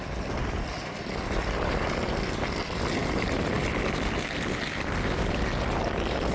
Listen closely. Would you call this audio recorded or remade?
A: recorded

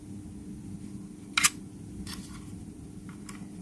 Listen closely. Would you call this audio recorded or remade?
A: recorded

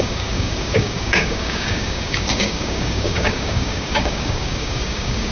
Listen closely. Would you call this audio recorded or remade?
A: remade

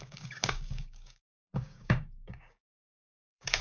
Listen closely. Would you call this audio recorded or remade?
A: remade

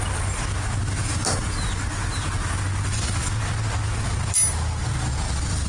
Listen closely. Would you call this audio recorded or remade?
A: recorded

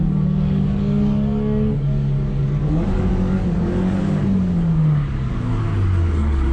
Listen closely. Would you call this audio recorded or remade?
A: remade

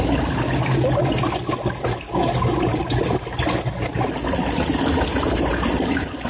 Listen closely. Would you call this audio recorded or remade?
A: recorded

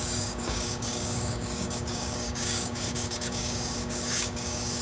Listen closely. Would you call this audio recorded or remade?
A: remade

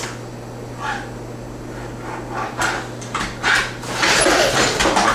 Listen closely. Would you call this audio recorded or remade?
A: recorded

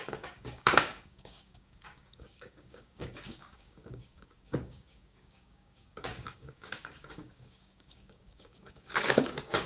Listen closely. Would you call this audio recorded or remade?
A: remade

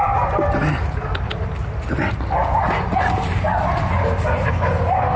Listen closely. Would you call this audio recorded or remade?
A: recorded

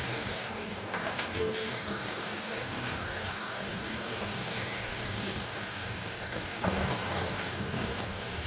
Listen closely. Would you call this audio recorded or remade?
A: remade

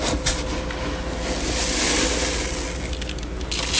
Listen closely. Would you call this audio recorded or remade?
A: recorded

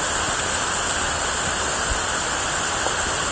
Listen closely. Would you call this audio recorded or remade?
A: recorded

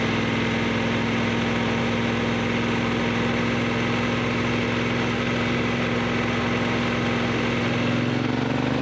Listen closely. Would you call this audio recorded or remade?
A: recorded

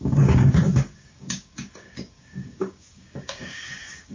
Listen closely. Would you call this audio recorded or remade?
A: remade